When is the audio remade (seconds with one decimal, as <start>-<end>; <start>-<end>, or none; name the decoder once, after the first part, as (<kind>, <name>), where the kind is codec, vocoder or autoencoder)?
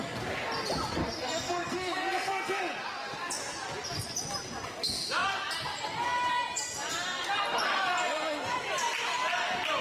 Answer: 1.0-2.6 (codec, SNAC)